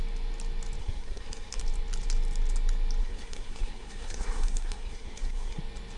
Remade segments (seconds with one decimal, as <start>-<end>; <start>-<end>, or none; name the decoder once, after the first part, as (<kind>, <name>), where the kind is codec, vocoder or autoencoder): 0.8-1.6 (codec, SNAC); 3.0-5.6